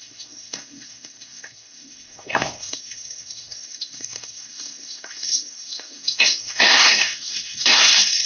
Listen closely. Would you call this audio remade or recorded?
remade